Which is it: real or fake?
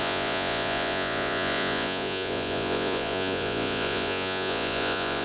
fake